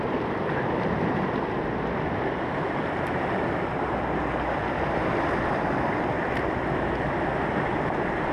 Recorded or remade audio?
recorded